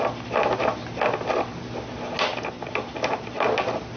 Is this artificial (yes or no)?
no